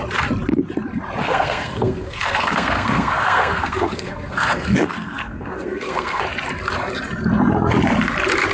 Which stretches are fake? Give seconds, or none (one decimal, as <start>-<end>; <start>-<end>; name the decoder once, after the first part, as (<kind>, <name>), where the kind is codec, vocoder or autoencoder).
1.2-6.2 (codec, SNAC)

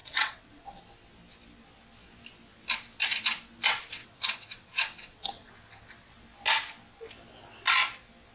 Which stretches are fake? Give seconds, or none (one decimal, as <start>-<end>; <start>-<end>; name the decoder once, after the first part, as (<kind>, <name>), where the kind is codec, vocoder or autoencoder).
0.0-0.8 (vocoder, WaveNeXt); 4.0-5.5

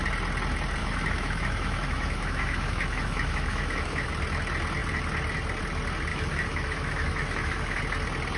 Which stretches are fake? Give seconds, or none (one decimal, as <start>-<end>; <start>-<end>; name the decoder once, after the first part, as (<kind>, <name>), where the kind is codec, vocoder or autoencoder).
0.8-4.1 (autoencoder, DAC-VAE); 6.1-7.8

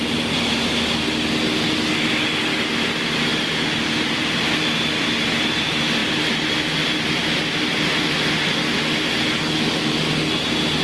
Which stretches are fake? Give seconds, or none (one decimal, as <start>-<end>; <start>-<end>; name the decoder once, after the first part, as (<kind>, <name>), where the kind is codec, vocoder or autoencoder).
none

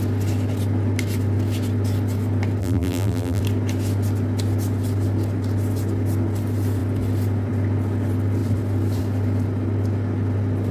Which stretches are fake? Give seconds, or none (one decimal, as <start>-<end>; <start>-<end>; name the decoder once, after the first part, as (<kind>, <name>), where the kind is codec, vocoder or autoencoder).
2.6-3.4 (vocoder, BigVGAN v2)

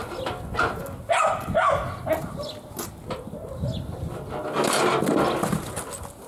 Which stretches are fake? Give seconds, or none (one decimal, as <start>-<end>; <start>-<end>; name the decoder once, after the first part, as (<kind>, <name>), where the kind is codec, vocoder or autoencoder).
none